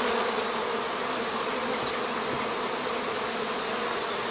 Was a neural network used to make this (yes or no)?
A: no